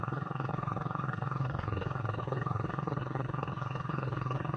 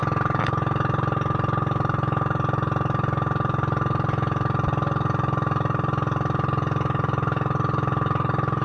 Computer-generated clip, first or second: first